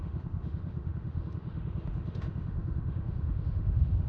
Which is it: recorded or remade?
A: remade